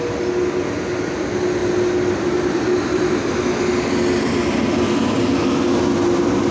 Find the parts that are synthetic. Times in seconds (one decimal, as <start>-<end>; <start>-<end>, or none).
none